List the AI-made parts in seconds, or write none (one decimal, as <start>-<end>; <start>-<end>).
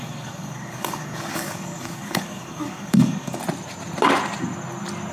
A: 0.0-3.4